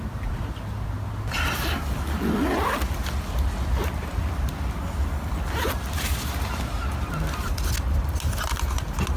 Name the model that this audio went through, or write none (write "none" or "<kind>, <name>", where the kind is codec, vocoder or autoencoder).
none